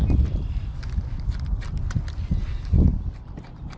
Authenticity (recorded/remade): recorded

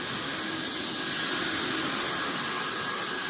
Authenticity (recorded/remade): recorded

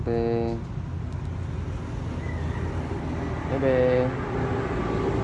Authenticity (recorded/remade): recorded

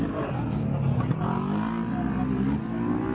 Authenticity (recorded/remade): recorded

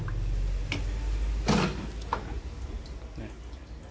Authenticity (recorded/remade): recorded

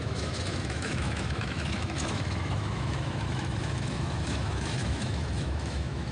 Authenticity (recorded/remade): remade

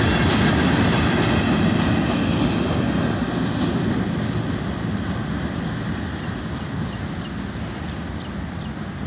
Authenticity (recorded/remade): recorded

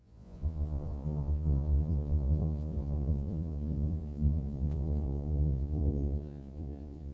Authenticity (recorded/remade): remade